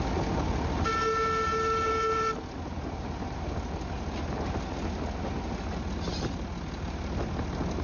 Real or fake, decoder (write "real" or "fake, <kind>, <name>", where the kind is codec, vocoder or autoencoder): real